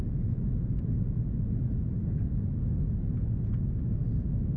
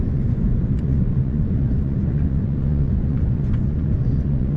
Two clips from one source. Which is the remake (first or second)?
second